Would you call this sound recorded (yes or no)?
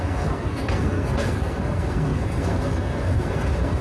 no